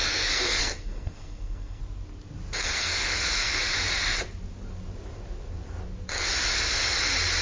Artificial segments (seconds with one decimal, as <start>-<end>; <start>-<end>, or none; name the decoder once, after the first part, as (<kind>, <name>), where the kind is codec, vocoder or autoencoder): 0.0-1.8 (codec, SNAC); 2.6-3.6